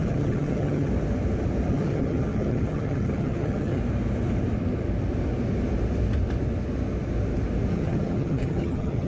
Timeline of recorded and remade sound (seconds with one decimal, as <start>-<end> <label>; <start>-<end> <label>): 0.0-0.9 remade; 0.9-1.7 recorded; 1.7-3.8 remade; 3.8-7.7 recorded; 7.7-9.1 remade